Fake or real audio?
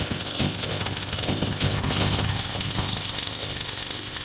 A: fake